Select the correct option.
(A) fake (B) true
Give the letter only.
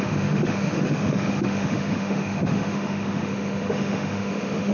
A